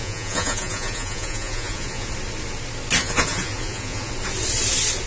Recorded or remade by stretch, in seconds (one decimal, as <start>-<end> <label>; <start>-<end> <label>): 0.0-2.1 remade; 2.1-3.0 recorded; 3.0-4.1 remade; 4.1-5.1 recorded